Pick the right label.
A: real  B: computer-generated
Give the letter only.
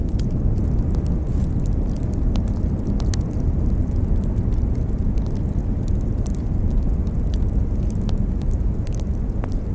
A